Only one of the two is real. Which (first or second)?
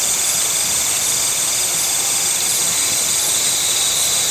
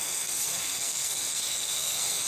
first